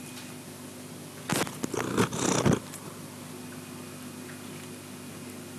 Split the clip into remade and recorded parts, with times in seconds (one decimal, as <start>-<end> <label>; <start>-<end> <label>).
0.0-5.6 recorded